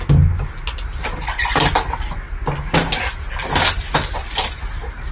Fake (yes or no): no